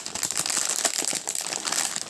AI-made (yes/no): no